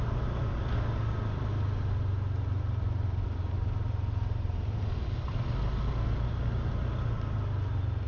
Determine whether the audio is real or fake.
real